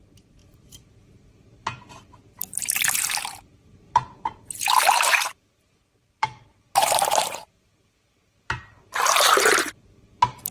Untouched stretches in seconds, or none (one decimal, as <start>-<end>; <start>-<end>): none